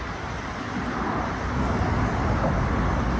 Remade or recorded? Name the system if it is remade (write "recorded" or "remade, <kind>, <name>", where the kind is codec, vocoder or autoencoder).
recorded